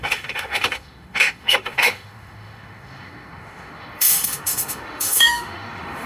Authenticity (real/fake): fake